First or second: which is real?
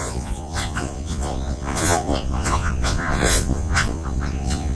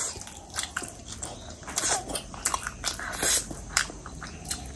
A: second